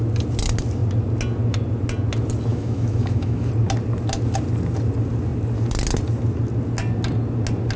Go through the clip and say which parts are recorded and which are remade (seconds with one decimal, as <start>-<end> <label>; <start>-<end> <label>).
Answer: 0.0-2.5 recorded; 2.5-3.5 remade; 3.5-7.8 recorded